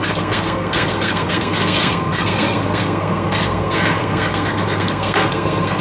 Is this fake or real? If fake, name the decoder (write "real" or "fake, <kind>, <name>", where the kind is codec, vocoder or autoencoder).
fake, codec, SNAC